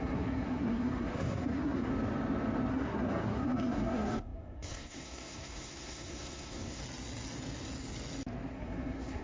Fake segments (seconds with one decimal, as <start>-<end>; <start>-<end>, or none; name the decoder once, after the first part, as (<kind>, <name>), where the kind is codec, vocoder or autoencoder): 0.0-1.9 (codec, SNAC); 2.7-6.8; 8.5-9.2